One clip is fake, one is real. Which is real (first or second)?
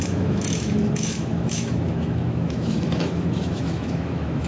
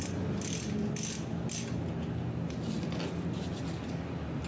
second